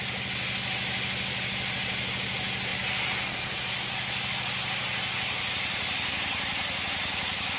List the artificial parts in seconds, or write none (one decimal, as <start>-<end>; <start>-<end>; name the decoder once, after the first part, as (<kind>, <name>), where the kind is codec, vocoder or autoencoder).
none